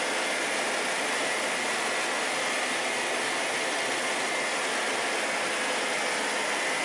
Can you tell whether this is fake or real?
real